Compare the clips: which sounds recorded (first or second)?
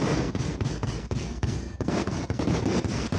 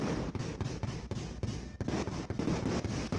second